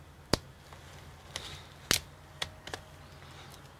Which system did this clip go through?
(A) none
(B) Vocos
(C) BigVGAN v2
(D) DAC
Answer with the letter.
A